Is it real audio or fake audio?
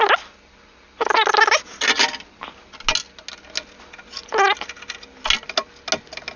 real